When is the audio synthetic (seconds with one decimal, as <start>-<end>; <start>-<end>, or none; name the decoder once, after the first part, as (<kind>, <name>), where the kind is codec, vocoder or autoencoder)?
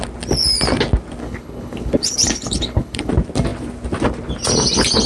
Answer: 1.2-3.1 (codec, HILCodec)